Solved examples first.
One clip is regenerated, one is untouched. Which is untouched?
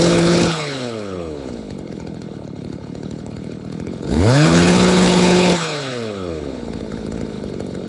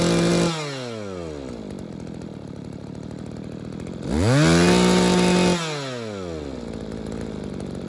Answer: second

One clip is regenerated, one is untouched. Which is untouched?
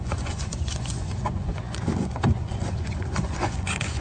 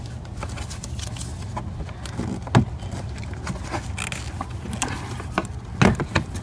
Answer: second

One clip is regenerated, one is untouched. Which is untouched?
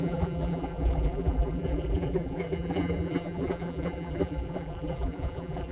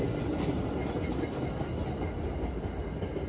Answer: second